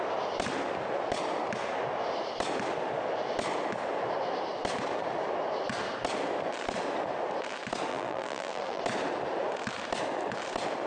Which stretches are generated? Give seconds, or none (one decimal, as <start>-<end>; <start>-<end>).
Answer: 7.9-8.8